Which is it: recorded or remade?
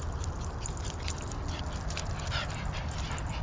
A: recorded